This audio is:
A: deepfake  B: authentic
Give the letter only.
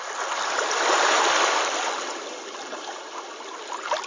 B